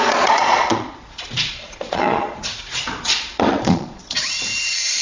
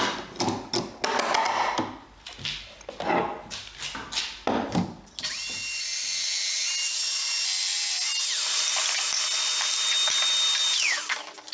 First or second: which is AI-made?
first